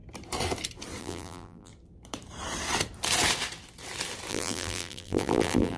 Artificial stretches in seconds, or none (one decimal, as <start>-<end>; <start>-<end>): 1.0-1.7; 4.3-5.8